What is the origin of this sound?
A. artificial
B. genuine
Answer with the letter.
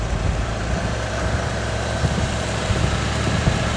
A